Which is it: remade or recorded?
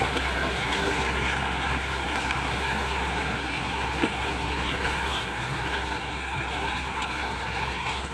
remade